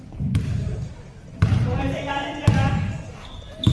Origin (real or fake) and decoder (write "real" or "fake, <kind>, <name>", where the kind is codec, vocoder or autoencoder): real